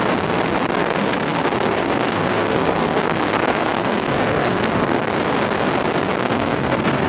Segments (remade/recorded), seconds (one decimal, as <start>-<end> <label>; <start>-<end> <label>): 0.0-0.8 recorded; 0.8-5.1 remade; 5.1-6.2 recorded; 6.2-7.1 remade